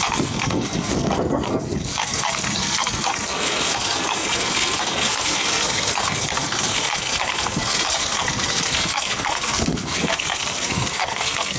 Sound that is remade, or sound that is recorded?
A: remade